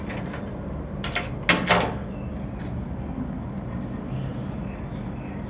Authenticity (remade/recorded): recorded